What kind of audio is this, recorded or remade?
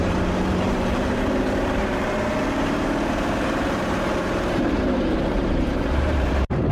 remade